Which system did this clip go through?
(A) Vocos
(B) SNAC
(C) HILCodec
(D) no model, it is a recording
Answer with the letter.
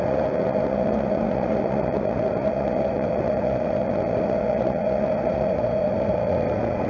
A